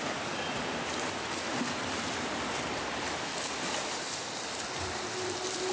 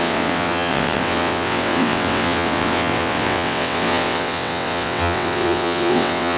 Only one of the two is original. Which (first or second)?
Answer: first